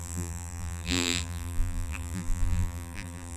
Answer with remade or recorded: remade